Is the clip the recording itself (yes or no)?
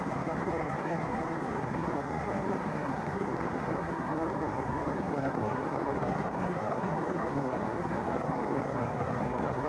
no